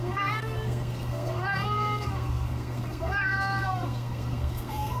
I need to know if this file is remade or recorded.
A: remade